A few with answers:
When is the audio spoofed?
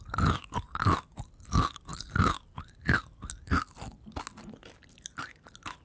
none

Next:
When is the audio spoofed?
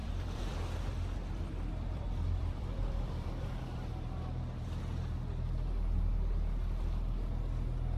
0.0-4.8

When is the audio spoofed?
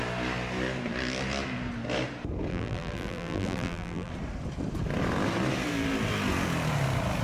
2.5-4.1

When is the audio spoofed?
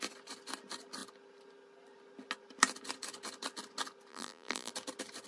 4.1-4.7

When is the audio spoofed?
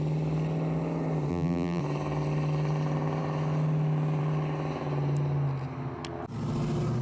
1.3-1.8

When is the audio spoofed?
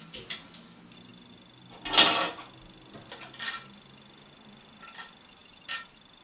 5.4-6.2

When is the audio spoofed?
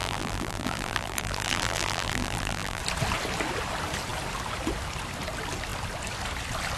0.0-2.8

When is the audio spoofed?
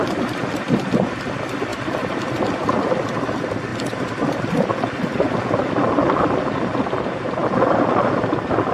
1.7-2.8; 3.7-4.3; 6.0-6.7